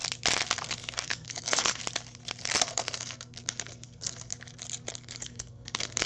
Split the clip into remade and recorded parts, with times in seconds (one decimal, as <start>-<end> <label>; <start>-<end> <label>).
0.0-0.6 recorded; 0.6-1.8 remade; 1.8-2.6 recorded; 2.6-4.3 remade; 4.3-4.9 recorded; 4.9-6.1 remade